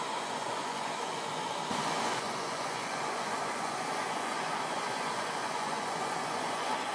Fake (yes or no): yes